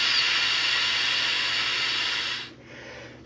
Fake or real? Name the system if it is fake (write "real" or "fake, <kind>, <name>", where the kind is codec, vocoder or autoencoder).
real